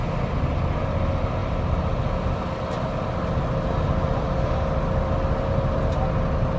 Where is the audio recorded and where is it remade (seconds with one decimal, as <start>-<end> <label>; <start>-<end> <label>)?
0.0-6.6 recorded

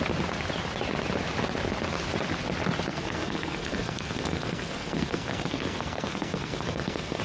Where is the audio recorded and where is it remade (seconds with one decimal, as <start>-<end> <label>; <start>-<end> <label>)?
0.0-2.9 recorded; 2.9-7.2 remade